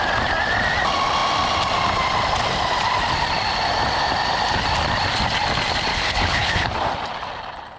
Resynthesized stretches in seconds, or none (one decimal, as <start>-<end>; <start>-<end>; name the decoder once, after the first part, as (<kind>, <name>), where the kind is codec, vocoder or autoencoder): 5.9-6.7 (codec, HILCodec)